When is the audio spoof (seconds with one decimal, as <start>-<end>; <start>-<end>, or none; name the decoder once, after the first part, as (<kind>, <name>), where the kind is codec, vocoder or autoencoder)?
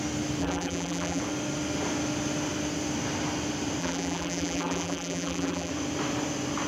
0.4-1.2 (vocoder, BigVGAN v2); 3.8-5.7